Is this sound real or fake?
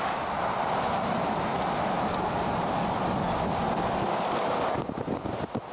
real